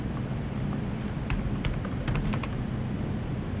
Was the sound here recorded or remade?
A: recorded